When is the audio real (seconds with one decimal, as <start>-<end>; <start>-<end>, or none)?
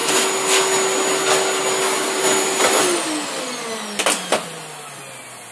0.0-5.5